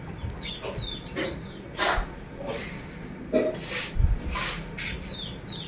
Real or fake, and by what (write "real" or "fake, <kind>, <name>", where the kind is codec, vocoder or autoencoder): real